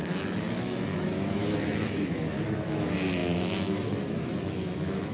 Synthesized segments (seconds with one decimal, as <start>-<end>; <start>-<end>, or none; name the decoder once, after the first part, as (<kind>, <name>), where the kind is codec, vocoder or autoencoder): 0.0-5.1 (autoencoder, DAC-VAE)

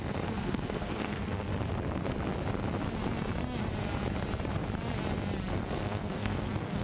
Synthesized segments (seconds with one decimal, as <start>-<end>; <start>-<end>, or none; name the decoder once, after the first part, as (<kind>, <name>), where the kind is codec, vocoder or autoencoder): 0.0-1.5 (codec, SNAC); 5.5-6.8

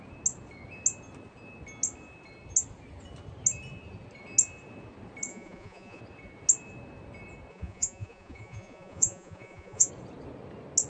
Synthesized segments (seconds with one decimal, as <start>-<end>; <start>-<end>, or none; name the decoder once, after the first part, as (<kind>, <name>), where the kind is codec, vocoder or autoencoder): 5.3-6.0 (vocoder, Vocos); 7.5-9.9

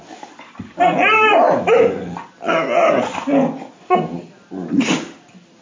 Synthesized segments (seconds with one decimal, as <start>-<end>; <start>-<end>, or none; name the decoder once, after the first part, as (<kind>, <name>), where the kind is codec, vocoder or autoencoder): none

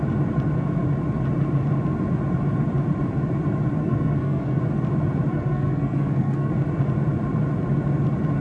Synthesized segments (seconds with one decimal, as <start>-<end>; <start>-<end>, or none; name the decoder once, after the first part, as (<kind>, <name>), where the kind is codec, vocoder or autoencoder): 3.8-4.6 (codec, SNAC); 5.3-6.5

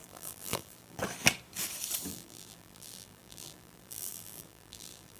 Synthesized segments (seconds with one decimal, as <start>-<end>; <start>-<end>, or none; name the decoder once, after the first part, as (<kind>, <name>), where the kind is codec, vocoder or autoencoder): 0.0-1.0 (vocoder, BigVGAN v2); 2.1-5.2

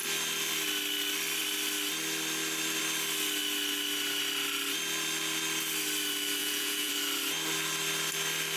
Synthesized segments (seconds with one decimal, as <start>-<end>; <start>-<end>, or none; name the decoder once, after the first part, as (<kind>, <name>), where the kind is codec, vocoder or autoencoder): 6.4-6.9 (vocoder, Vocos)

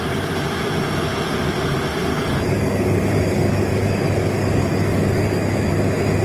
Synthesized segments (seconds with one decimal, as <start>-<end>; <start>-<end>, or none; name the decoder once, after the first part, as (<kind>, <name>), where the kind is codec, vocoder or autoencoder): 2.1-5.8 (codec, DAC)